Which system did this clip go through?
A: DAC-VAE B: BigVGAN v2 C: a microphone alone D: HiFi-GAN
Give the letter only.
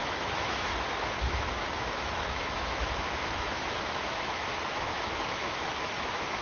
A